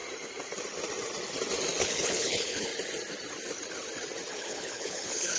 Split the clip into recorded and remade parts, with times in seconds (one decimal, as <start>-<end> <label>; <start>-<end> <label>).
0.0-1.8 recorded; 1.8-2.7 remade; 2.7-4.3 recorded; 4.3-5.4 remade